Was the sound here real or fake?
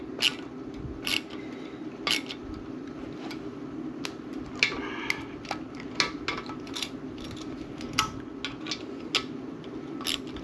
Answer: real